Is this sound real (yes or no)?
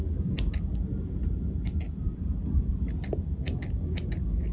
yes